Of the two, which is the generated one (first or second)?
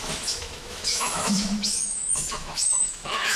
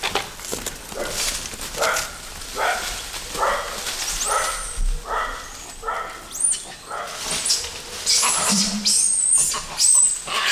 first